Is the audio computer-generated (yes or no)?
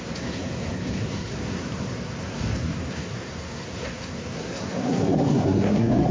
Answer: yes